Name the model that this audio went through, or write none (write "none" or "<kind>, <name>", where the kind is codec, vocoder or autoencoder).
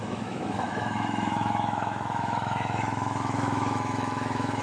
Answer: autoencoder, DAC-VAE